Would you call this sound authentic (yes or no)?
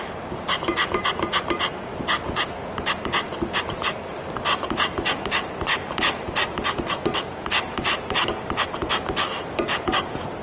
yes